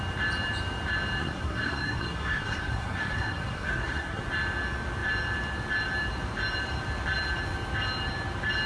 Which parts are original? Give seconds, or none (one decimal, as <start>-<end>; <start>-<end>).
0.0-1.2; 4.2-8.7